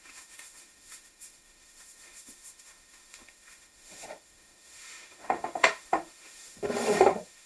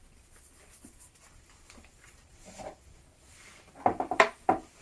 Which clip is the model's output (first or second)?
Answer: first